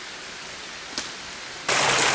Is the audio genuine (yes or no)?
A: yes